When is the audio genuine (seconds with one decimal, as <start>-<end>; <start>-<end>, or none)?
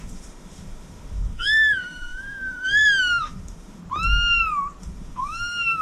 3.8-4.8